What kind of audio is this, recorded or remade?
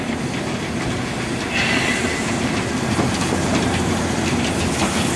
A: recorded